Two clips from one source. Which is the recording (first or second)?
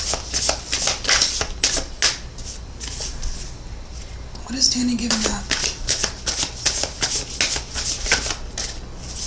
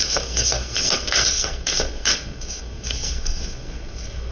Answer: first